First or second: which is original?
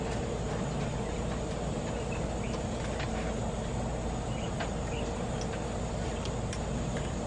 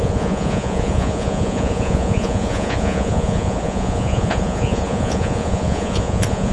first